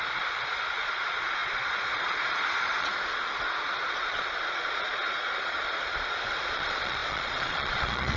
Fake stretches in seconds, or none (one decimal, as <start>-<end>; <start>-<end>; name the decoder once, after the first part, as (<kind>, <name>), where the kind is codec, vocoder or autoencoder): 0.0-8.2 (vocoder, Vocos)